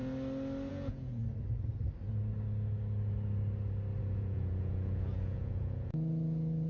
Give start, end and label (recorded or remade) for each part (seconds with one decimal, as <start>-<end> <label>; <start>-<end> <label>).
0.0-0.7 recorded; 0.7-1.2 remade; 1.2-4.0 recorded; 4.0-6.7 remade